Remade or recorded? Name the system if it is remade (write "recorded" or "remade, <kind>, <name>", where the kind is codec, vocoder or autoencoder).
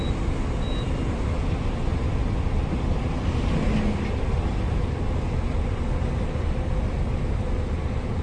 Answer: recorded